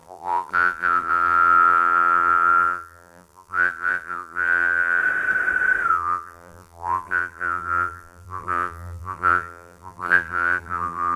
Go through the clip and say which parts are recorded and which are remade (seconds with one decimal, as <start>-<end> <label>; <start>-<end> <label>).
0.0-5.0 remade; 5.0-5.9 recorded; 5.9-11.2 remade